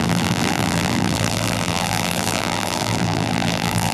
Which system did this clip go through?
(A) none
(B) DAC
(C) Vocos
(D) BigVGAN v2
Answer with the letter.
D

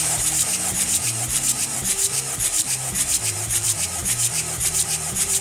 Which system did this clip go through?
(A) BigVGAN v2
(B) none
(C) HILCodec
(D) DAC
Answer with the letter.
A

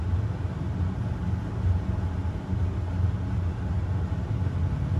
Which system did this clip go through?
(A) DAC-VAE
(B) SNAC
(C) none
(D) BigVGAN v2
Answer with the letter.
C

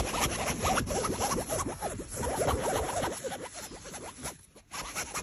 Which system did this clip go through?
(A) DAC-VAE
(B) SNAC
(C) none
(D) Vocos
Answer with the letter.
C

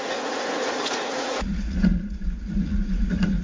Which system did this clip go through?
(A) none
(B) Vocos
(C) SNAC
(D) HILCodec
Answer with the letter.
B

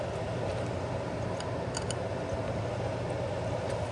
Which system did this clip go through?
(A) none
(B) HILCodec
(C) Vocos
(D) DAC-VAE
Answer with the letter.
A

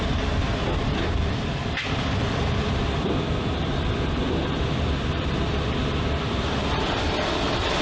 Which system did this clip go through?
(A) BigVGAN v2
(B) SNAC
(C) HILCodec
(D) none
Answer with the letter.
A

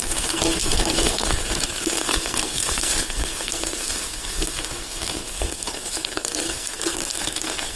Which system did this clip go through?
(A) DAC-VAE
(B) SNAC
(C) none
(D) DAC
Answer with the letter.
B